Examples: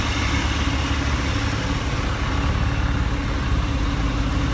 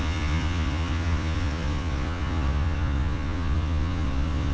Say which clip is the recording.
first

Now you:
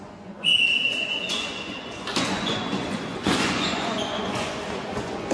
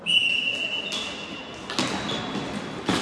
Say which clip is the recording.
second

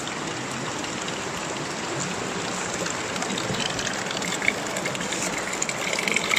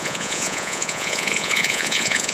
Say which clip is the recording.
first